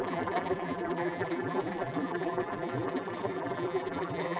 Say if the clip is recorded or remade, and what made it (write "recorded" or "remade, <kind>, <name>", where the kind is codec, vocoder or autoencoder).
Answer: remade, vocoder, BigVGAN v2